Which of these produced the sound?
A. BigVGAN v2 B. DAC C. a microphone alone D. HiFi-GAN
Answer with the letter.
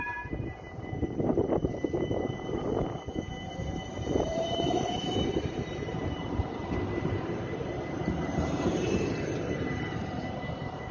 A